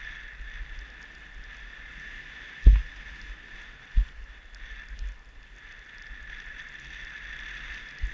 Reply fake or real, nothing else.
real